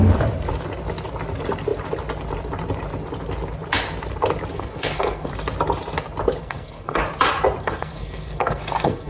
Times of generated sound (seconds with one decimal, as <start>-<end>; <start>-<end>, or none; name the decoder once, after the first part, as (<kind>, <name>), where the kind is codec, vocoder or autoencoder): 4.5-5.3 (codec, SNAC); 6.4-7.0; 7.6-9.1